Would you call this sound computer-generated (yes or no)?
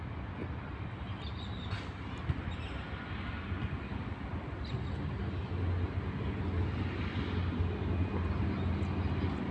no